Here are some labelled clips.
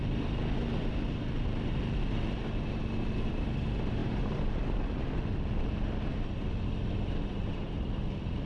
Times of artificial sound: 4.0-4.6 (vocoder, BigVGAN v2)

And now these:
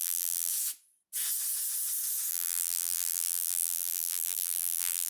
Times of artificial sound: 0.0-0.5 (vocoder, BigVGAN v2); 2.3-5.1

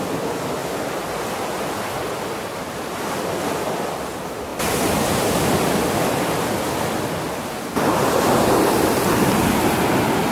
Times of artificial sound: 0.6-3.4 (vocoder, BigVGAN v2); 4.5-9.2

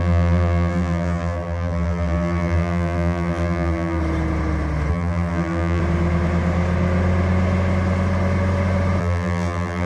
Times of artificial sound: 0.0-4.0 (vocoder, BigVGAN v2); 4.9-5.8; 9.0-9.9

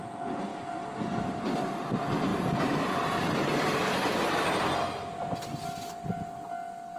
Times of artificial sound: none

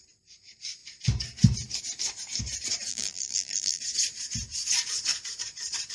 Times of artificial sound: 2.9-3.8 (vocoder, BigVGAN v2)

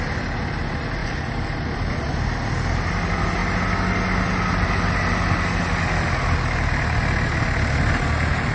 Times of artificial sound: 1.0-2.1 (vocoder, BigVGAN v2)

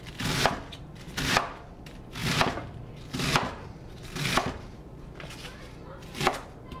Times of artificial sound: none